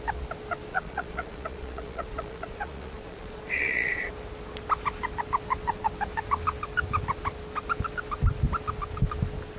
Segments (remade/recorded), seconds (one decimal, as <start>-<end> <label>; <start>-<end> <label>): 0.0-0.7 recorded; 0.7-4.1 remade; 4.1-9.6 recorded